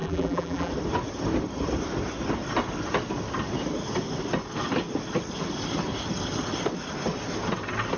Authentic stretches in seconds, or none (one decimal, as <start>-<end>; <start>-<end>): 0.7-8.0